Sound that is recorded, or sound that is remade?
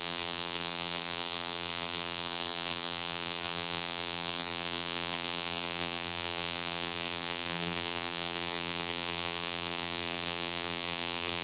remade